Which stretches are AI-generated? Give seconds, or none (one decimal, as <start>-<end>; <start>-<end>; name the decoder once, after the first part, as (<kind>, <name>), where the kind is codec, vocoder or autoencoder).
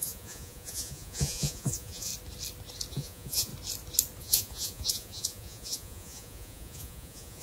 0.0-2.1 (vocoder, Vocos); 2.9-3.5; 4.2-7.4